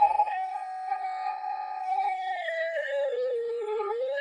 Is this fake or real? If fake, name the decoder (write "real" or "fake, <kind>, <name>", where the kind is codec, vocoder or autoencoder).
fake, codec, SNAC